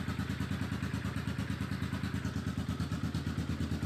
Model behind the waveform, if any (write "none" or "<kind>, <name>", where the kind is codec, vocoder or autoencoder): none